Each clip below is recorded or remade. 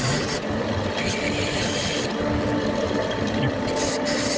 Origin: recorded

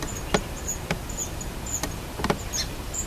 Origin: recorded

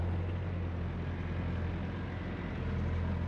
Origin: recorded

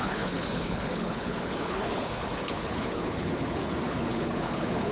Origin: remade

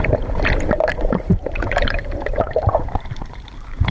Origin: remade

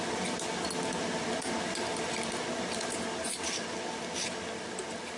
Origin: recorded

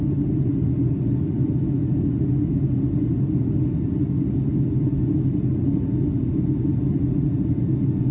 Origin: recorded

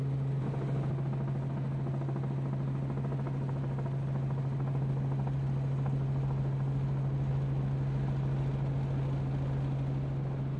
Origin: recorded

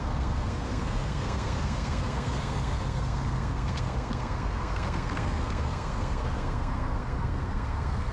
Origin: remade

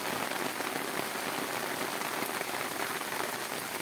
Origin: recorded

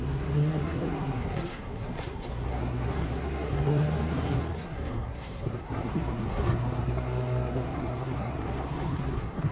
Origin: remade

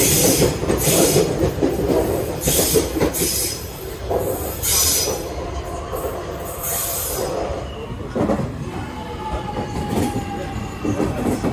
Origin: remade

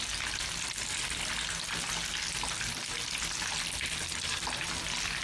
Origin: recorded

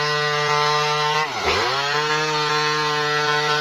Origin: recorded